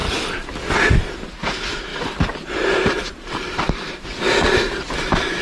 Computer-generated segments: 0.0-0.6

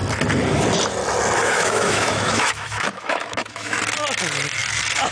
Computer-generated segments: 1.4-3.8

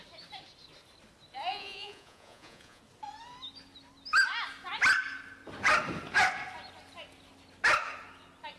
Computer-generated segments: 1.5-2.8

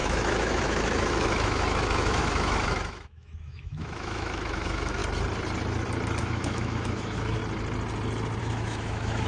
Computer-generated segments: 0.0-5.0; 6.2-7.4; 8.4-9.3